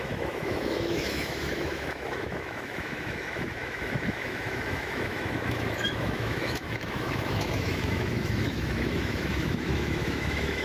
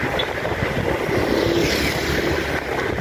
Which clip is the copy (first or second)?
first